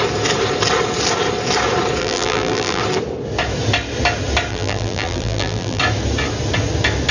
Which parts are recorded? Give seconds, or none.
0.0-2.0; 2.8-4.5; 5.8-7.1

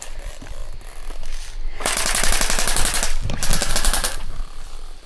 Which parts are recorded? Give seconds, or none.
0.6-3.7

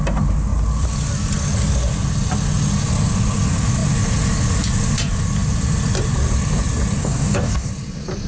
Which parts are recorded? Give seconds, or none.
0.0-7.0; 7.7-8.3

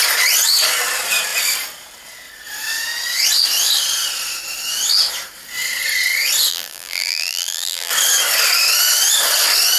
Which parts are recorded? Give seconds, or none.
0.0-6.5; 7.9-9.8

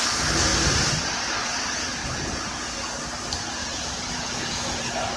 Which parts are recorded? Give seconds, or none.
0.0-2.0; 2.7-3.6; 4.8-5.2

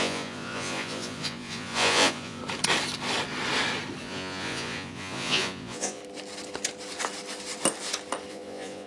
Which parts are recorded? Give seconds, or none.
2.4-4.0; 6.0-8.3

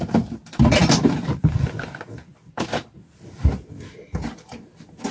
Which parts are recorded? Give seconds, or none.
none